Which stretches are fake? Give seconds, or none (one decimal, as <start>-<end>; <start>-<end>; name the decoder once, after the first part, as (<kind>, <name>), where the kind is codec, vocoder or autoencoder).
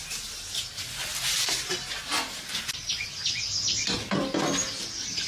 none